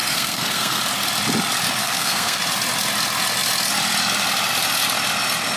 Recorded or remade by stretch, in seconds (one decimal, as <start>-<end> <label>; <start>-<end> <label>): 0.0-0.8 remade; 0.8-1.8 recorded; 1.8-2.4 remade; 2.4-5.6 recorded